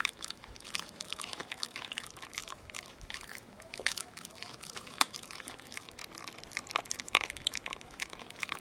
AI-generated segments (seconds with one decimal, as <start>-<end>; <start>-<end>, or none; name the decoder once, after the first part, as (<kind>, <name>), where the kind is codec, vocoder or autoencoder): 0.0-6.0 (autoencoder, DAC-VAE); 6.9-8.6